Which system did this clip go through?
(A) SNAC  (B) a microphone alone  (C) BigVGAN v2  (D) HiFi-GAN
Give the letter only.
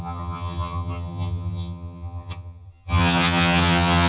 D